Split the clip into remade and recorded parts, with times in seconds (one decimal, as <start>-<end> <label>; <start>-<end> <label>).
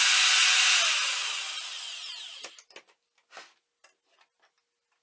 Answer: 0.0-5.0 recorded